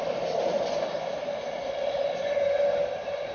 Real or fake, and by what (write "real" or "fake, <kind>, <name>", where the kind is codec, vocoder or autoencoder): real